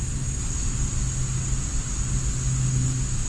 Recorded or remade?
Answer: recorded